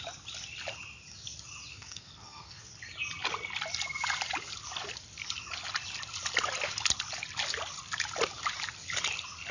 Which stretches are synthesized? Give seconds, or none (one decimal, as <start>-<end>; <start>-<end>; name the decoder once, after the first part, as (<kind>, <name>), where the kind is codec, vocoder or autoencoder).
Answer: 1.7-2.7 (codec, SNAC)